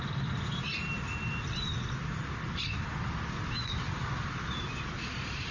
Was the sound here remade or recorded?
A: recorded